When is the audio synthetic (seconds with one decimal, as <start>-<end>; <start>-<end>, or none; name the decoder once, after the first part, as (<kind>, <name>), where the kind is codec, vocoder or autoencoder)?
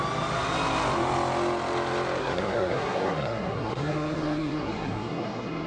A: 2.2-5.7 (codec, SNAC)